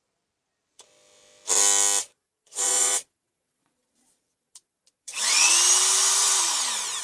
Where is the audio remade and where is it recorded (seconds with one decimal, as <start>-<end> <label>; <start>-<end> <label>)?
0.0-2.0 recorded; 2.0-5.5 remade; 5.5-7.0 recorded

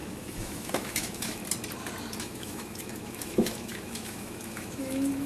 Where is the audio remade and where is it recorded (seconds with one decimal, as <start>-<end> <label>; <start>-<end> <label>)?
0.0-1.4 remade; 1.4-2.2 recorded; 2.2-5.3 remade

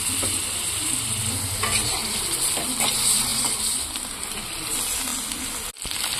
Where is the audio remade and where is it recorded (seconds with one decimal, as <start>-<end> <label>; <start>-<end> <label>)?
0.0-2.0 recorded; 2.0-2.7 remade; 2.7-3.3 recorded; 3.3-4.0 remade; 4.0-6.2 recorded